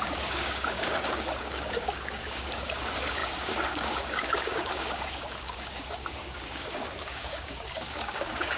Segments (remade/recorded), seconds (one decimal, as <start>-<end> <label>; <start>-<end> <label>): 0.0-8.6 remade